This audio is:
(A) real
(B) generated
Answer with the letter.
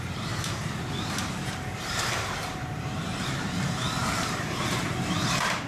B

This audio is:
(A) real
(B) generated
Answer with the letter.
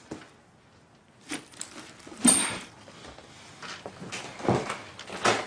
A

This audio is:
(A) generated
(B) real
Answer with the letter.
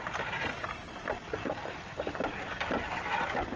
A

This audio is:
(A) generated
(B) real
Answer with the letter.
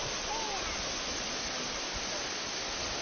B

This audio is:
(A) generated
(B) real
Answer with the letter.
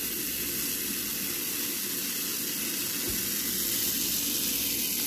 B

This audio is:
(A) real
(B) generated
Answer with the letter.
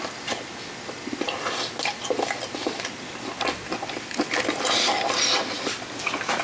A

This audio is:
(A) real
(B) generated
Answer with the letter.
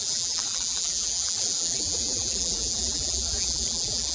B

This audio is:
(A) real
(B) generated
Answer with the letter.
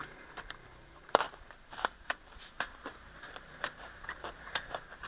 B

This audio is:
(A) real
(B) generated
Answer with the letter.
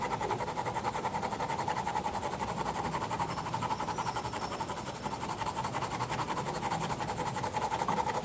A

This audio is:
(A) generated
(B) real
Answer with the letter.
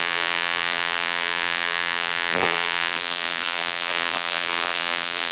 A